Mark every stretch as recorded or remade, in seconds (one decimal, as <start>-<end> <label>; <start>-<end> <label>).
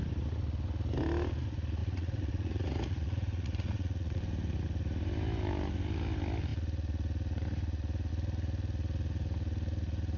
0.0-1.8 recorded; 1.8-4.2 remade; 4.2-10.2 recorded